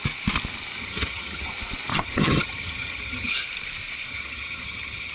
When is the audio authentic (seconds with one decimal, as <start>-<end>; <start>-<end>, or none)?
0.0-0.8; 1.5-1.9; 3.3-4.1